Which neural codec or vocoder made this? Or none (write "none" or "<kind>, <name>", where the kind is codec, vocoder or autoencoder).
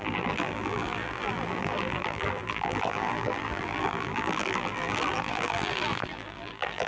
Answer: vocoder, BigVGAN v2